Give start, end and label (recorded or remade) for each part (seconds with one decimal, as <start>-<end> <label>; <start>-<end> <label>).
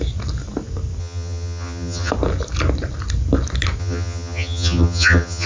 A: 0.0-1.0 recorded; 1.0-2.1 remade; 2.1-3.8 recorded; 3.8-5.5 remade